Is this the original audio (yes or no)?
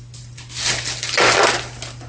yes